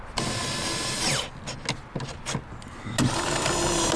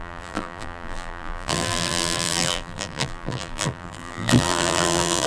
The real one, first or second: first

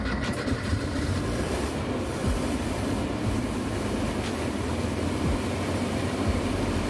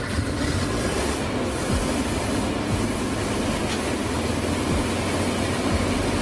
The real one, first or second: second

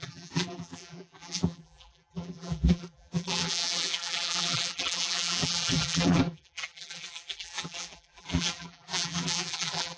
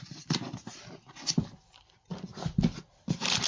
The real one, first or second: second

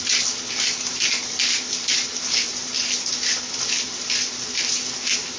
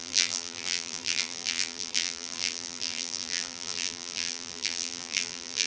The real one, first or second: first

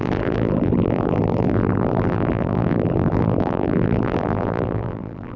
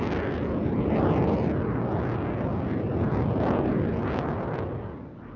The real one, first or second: second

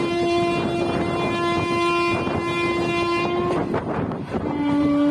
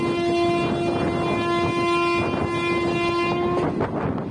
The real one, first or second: second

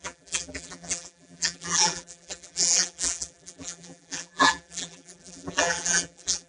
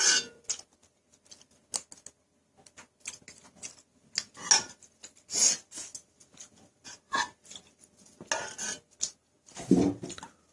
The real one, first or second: second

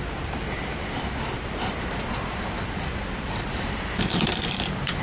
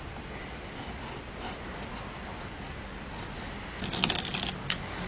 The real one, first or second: second